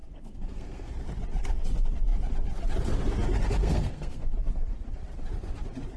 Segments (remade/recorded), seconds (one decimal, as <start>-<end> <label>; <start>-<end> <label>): 0.0-0.9 remade; 0.9-3.6 recorded; 3.6-4.2 remade; 4.2-6.0 recorded